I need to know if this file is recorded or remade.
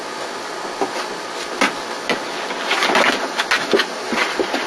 recorded